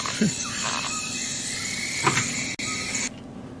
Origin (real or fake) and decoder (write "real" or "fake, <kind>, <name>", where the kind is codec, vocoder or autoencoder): real